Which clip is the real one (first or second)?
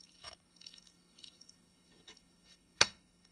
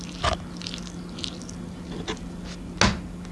second